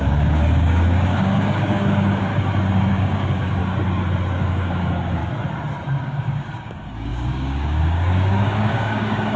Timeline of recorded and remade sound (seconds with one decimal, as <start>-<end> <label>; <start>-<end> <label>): 0.0-2.3 remade; 2.3-2.9 recorded; 2.9-3.6 remade; 3.6-4.4 recorded; 4.4-5.2 remade; 5.2-6.0 recorded; 6.0-9.4 remade